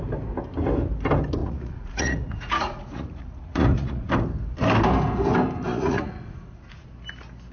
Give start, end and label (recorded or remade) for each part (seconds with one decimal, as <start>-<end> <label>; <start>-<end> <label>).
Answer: 0.0-1.4 recorded; 1.4-4.1 remade; 4.1-5.7 recorded; 5.7-6.9 remade; 6.9-7.5 recorded